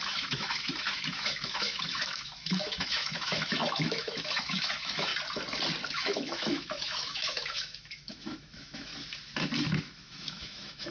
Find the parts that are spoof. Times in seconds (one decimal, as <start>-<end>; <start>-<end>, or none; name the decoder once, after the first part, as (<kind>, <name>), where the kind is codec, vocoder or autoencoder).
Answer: 0.0-5.1 (autoencoder, DAC-VAE); 5.9-8.9; 9.8-10.9